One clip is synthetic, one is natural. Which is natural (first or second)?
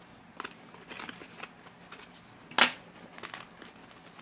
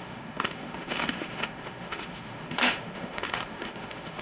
first